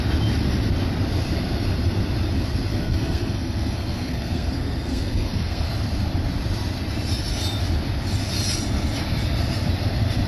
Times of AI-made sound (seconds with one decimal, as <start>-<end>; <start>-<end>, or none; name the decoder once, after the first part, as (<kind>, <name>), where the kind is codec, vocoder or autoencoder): 2.7-5.7 (codec, SNAC)